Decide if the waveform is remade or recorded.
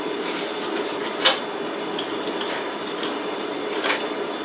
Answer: recorded